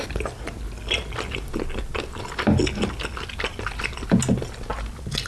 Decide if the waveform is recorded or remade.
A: recorded